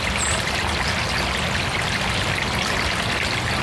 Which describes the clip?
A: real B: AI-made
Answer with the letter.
A